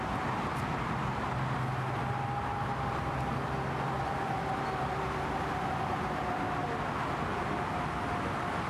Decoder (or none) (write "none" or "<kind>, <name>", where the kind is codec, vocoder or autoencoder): none